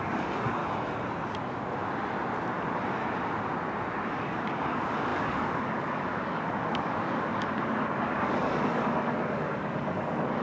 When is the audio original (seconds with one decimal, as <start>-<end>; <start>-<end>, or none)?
0.6-4.1